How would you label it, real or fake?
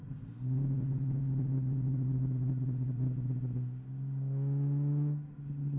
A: real